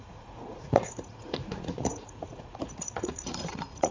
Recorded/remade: remade